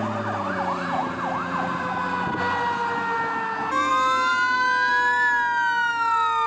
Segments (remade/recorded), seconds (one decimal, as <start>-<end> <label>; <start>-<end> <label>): 0.0-6.5 recorded